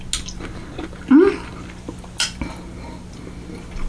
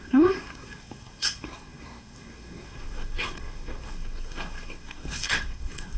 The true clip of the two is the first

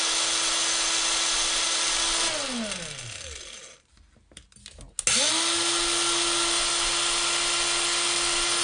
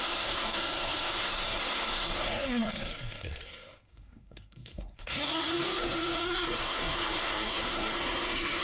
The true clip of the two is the first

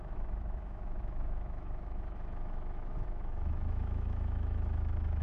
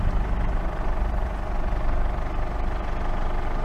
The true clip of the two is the second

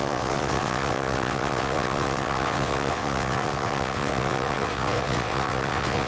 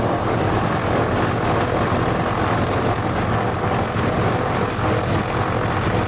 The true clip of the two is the second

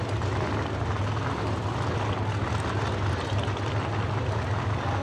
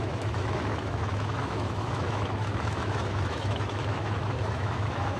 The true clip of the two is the first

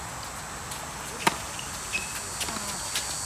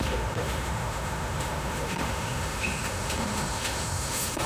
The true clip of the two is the first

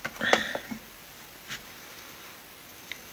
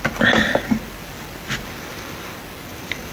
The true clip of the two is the first